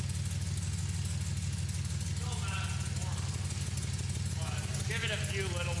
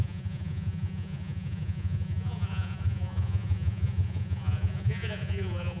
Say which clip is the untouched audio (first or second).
first